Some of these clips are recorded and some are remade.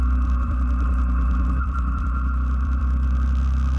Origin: remade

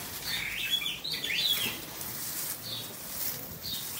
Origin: recorded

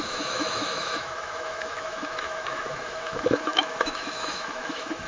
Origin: remade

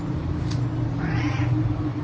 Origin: remade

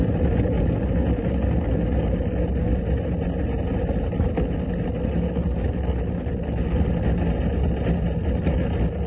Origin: recorded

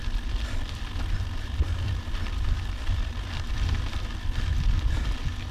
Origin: recorded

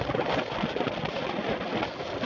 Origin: recorded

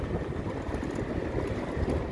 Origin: recorded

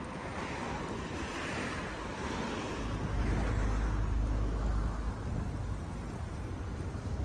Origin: recorded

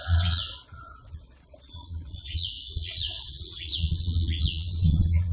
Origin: remade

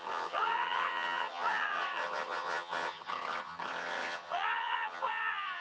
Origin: remade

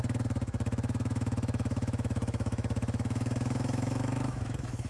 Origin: remade